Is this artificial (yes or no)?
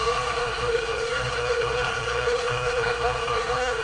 yes